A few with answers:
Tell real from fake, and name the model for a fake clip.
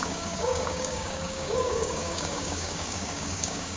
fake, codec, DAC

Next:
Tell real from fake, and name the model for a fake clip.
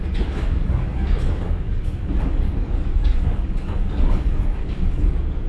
fake, codec, DAC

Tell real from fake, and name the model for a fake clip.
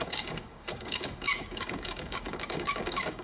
fake, codec, DAC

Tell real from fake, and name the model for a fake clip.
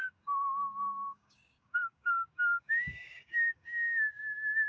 fake, codec, DAC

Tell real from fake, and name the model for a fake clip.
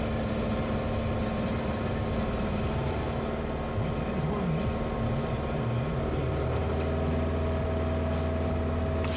real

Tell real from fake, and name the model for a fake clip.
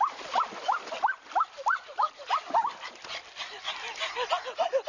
real